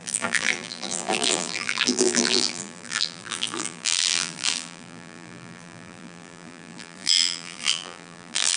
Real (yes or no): no